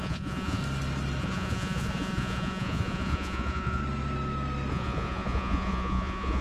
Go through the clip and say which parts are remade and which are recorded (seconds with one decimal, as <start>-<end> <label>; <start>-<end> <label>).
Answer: 0.0-0.6 remade; 0.6-1.2 recorded; 1.2-3.8 remade; 3.8-4.7 recorded; 4.7-6.4 remade